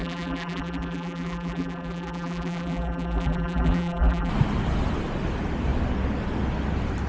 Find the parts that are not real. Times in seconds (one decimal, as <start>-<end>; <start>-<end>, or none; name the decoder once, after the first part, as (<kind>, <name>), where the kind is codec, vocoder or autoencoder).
0.0-4.3 (vocoder, BigVGAN v2)